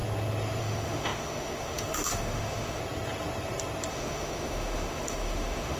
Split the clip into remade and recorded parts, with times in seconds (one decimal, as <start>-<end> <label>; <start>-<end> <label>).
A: 0.0-0.6 recorded; 0.6-2.8 remade; 2.8-3.9 recorded; 3.9-5.8 remade